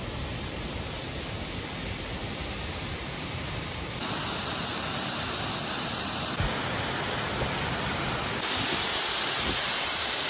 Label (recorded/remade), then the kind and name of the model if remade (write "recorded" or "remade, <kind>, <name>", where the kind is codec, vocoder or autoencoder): recorded